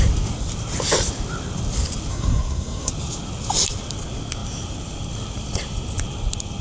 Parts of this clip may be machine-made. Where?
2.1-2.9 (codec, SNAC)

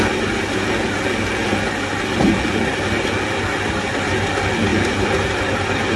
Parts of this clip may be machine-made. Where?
none

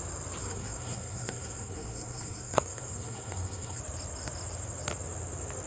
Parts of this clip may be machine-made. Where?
0.4-3.8 (codec, SNAC)

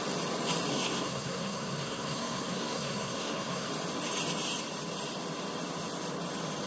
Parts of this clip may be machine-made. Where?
0.7-3.7 (codec, SNAC)

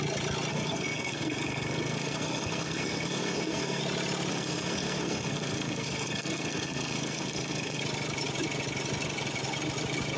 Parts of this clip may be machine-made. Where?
0.5-3.8 (codec, SNAC); 4.3-7.8

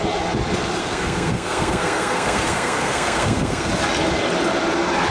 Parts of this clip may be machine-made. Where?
0.8-3.7 (codec, SNAC)

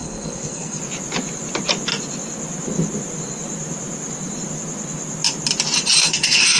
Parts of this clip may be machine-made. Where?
0.0-0.8 (codec, SNAC); 6.0-6.6